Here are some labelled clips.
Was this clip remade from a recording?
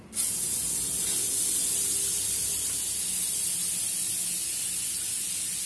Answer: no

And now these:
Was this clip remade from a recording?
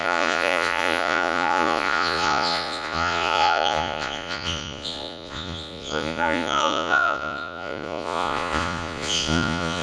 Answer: yes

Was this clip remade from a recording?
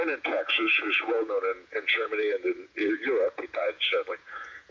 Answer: yes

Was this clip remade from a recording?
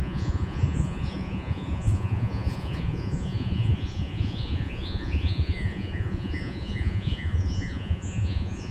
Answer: yes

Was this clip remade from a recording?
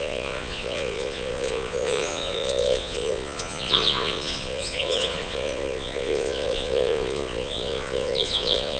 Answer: yes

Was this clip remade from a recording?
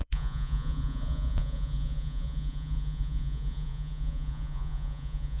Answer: yes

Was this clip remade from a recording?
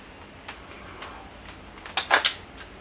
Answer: no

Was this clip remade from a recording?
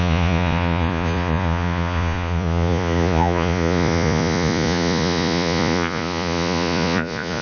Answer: yes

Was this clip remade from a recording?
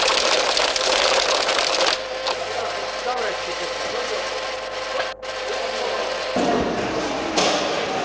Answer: no